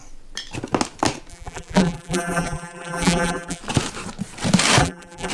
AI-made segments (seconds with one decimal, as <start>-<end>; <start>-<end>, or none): 1.3-3.6; 4.8-5.3